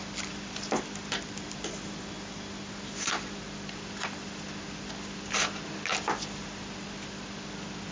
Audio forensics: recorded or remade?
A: recorded